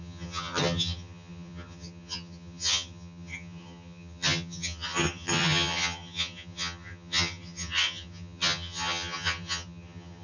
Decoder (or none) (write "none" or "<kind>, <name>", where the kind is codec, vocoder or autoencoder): vocoder, HiFi-GAN